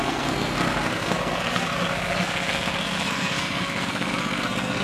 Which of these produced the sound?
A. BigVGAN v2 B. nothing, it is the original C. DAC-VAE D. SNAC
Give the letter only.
D